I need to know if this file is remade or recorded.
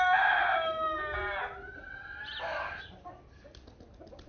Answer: recorded